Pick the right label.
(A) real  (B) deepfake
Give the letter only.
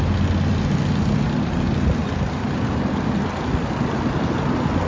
A